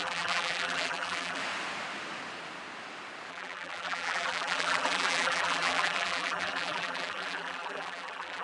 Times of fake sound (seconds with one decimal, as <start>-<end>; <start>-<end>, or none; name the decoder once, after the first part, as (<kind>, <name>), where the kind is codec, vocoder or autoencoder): 0.0-1.4 (vocoder, BigVGAN v2); 3.3-8.4